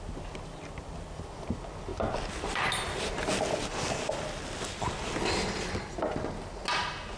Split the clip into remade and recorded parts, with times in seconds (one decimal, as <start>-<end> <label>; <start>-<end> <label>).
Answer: 0.0-7.2 recorded